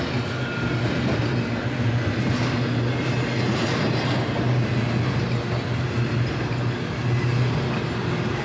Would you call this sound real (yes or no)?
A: yes